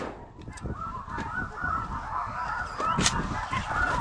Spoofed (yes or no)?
no